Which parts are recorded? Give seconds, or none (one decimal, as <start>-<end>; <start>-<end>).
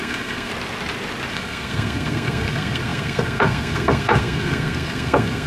0.5-1.3